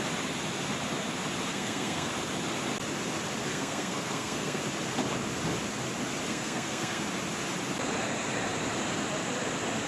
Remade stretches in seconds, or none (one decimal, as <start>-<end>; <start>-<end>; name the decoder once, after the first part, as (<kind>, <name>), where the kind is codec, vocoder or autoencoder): 1.5-2.1 (codec, SNAC); 3.5-4.6; 6.3-7.0